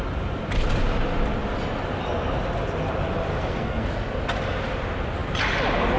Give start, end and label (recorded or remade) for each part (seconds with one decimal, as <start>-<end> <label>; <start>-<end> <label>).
0.0-3.3 recorded; 3.3-3.9 remade; 3.9-6.0 recorded